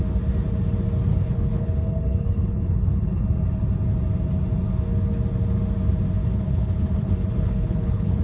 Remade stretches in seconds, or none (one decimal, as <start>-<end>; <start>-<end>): 1.1-3.2; 6.2-8.2